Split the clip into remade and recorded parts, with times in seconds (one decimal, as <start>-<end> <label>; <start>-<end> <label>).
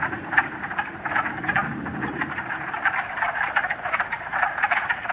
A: 0.0-1.6 recorded; 1.6-5.1 remade